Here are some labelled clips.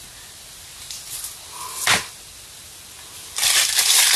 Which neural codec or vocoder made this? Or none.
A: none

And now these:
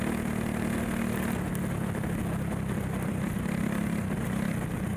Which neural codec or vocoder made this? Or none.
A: none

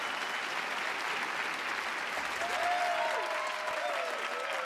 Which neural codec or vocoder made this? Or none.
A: none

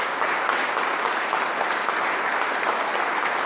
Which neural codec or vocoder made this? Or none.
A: none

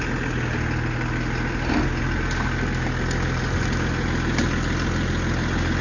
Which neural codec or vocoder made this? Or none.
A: none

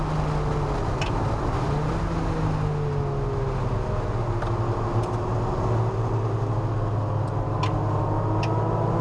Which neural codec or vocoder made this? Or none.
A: none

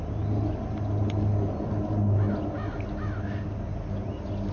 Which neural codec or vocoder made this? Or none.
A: none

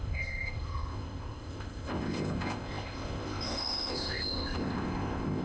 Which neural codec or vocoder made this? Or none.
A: codec, ZipCodec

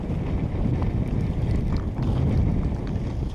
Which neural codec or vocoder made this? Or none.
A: none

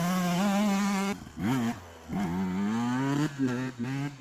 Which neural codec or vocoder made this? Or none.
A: none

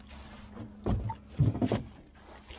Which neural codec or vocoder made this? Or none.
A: none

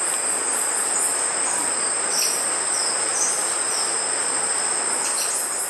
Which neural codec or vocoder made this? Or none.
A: none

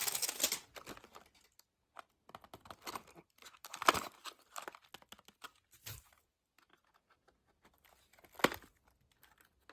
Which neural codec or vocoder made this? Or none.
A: none